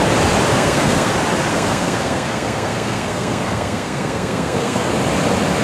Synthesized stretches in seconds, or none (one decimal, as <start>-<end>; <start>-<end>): 0.5-1.1; 1.5-4.9